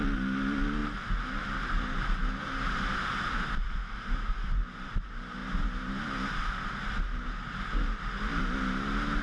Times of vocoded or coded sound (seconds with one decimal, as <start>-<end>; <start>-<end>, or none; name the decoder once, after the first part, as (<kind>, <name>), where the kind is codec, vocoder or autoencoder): none